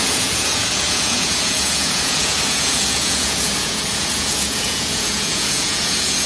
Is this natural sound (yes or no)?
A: no